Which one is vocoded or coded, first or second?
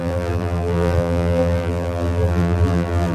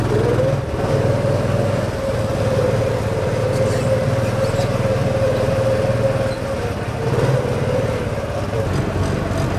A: first